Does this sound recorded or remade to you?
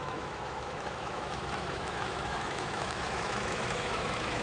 remade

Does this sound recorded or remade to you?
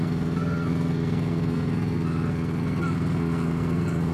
remade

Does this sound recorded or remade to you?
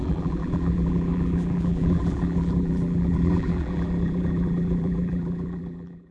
remade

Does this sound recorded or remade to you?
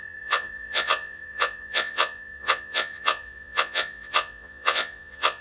remade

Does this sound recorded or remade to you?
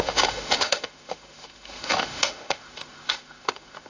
remade